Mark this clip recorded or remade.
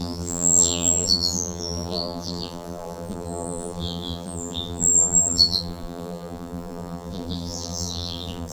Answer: remade